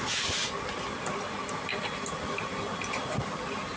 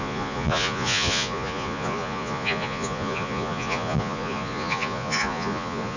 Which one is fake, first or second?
second